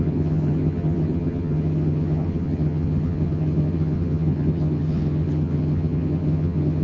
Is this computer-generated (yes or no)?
yes